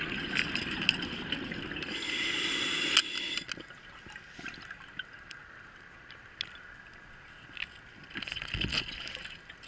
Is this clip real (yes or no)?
yes